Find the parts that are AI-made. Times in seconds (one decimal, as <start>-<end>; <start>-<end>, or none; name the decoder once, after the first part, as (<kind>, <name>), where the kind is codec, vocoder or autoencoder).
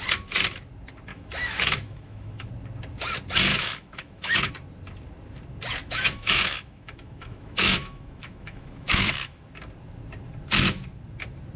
1.1-2.5 (autoencoder, DAC-VAE); 3.5-4.5; 5.8-9.5